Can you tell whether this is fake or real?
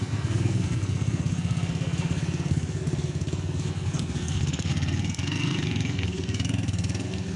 fake